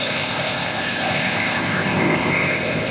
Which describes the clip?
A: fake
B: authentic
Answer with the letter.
A